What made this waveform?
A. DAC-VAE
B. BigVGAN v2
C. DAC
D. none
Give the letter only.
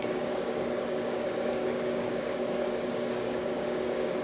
C